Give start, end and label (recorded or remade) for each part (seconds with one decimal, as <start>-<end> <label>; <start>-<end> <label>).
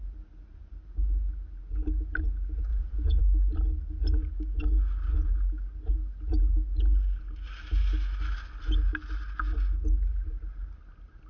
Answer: 0.0-2.7 recorded; 2.7-3.2 remade; 3.2-11.3 recorded